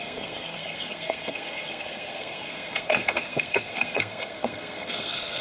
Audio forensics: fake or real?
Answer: fake